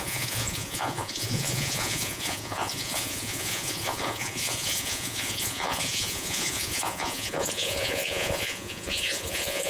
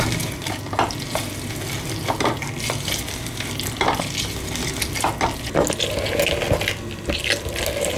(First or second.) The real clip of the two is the second